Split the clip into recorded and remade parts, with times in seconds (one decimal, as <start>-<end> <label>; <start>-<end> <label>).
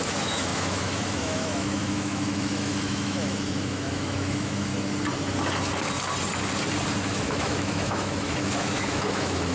0.0-4.7 remade; 4.7-7.1 recorded; 7.1-9.5 remade